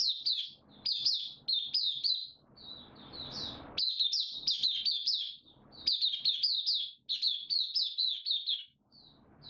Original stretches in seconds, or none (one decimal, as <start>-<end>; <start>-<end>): 0.0-9.5